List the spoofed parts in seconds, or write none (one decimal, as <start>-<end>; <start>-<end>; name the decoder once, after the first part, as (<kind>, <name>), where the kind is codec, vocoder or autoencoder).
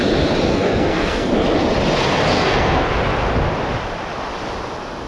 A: 0.5-1.3 (codec, SNAC); 2.3-2.9